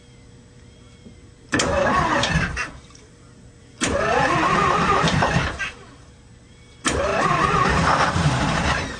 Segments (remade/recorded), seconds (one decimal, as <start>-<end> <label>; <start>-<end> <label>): 0.0-9.0 remade